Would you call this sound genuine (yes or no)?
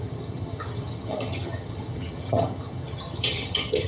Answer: no